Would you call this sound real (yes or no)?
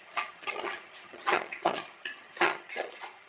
no